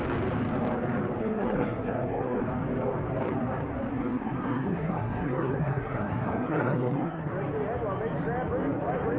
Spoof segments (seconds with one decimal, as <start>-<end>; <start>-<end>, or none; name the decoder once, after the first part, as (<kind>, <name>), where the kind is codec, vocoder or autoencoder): 1.2-2.4 (codec, SNAC); 3.9-7.3